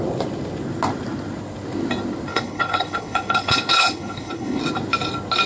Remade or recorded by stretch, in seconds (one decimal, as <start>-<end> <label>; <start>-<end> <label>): 0.0-2.3 recorded; 2.3-4.6 remade; 4.6-5.5 recorded